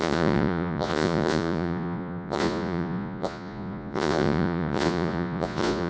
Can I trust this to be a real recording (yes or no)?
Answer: no